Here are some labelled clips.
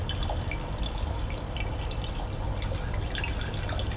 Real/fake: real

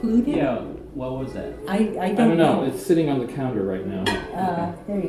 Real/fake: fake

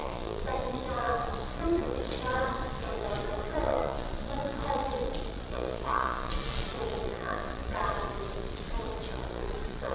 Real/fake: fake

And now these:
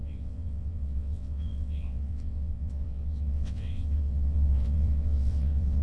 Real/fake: fake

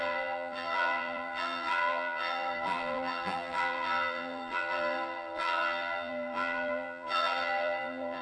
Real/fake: fake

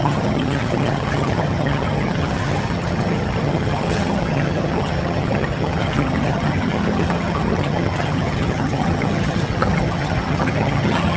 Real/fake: fake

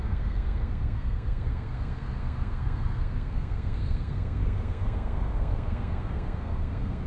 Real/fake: fake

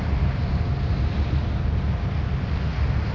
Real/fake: real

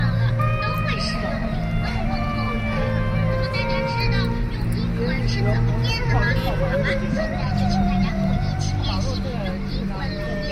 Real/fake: real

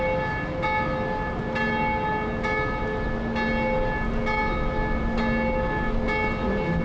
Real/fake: real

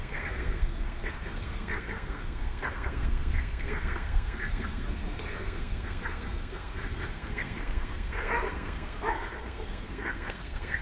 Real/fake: fake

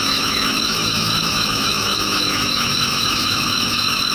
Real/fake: fake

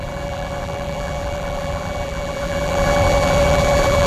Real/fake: fake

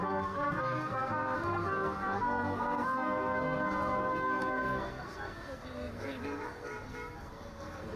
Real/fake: fake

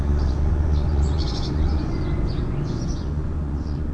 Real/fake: fake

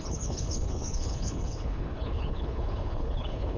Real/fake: fake